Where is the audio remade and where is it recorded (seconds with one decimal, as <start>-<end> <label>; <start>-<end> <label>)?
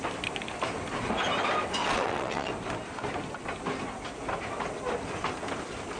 0.0-1.8 recorded; 1.8-2.5 remade; 2.5-6.0 recorded